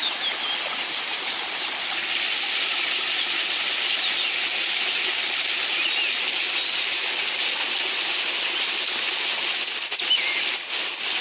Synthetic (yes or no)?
no